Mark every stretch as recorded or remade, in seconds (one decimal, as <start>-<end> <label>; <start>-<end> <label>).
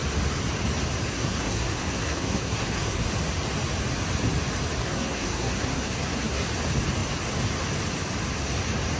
0.0-1.1 recorded; 1.1-3.1 remade; 3.1-4.8 recorded; 4.8-6.5 remade; 6.5-9.0 recorded